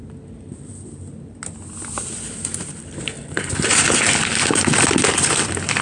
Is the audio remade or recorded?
recorded